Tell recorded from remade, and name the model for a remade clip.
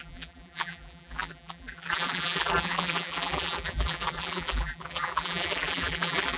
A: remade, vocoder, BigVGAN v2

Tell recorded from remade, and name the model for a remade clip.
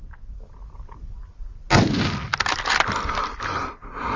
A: recorded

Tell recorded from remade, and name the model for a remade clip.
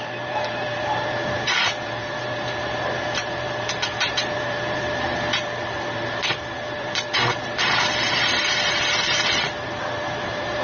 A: remade, vocoder, BigVGAN v2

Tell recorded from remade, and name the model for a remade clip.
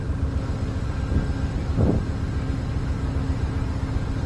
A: recorded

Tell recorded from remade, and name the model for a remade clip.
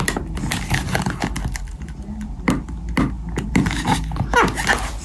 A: recorded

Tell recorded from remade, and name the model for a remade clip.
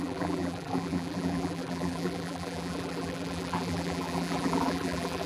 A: remade, vocoder, BigVGAN v2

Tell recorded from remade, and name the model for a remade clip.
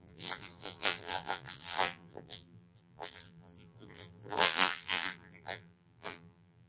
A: remade, vocoder, BigVGAN v2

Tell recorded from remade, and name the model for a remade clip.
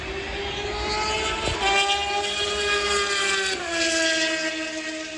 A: recorded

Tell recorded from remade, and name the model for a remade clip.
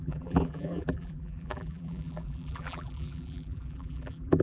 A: remade, vocoder, BigVGAN v2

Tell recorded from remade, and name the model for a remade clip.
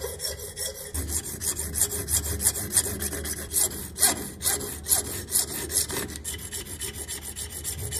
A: recorded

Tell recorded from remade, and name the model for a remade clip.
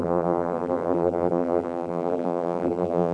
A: remade, vocoder, BigVGAN v2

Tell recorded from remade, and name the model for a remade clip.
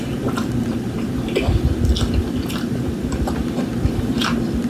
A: remade, vocoder, BigVGAN v2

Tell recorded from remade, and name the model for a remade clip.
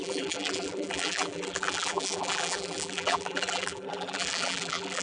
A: remade, vocoder, BigVGAN v2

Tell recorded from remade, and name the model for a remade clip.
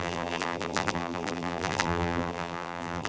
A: remade, vocoder, BigVGAN v2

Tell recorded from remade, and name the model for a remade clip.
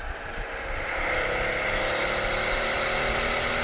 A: remade, vocoder, BigVGAN v2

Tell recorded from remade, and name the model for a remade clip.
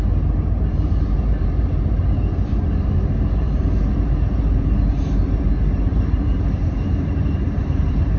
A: remade, vocoder, BigVGAN v2